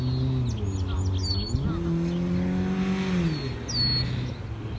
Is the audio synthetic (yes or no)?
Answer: no